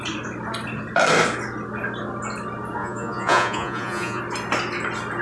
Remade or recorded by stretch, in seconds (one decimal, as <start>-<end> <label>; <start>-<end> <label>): 0.0-2.8 recorded; 2.8-4.2 remade; 4.2-5.2 recorded